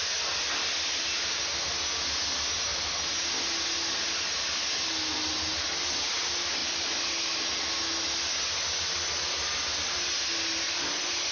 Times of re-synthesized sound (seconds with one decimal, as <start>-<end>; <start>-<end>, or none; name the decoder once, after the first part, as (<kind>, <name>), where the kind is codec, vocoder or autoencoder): none